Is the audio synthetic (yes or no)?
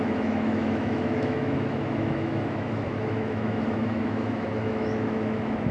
yes